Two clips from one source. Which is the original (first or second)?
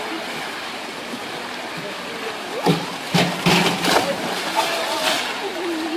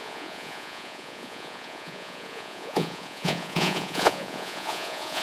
first